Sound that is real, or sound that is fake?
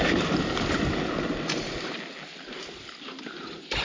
real